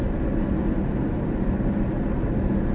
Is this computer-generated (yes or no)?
no